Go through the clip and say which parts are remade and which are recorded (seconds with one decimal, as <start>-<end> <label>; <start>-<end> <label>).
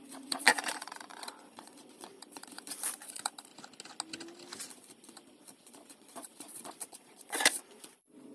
0.0-3.5 remade; 3.5-4.7 recorded; 4.7-8.3 remade